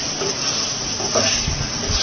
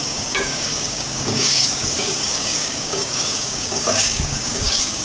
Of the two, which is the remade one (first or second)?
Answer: second